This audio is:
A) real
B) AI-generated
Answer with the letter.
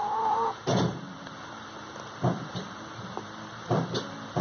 B